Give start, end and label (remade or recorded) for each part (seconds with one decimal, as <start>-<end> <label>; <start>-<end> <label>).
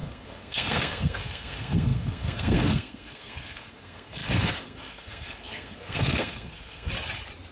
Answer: 0.0-6.9 remade; 6.9-7.5 recorded